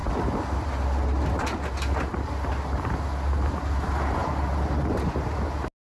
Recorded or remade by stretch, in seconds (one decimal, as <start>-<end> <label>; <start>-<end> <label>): 0.0-5.9 recorded